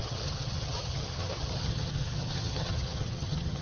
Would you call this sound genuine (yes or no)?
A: no